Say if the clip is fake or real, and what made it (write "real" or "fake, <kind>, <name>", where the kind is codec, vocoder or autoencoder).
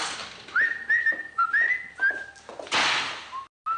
real